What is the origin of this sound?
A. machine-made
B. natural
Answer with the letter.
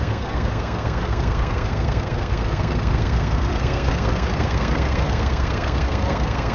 A